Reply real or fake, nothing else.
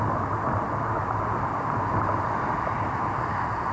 real